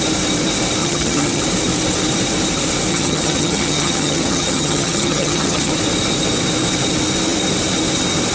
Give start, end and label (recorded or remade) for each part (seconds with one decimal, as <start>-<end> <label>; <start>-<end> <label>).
0.0-0.8 recorded; 0.8-1.4 remade; 1.4-2.9 recorded; 2.9-5.7 remade; 5.7-8.3 recorded